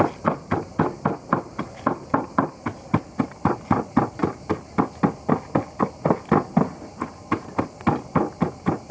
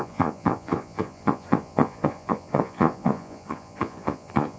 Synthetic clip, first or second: second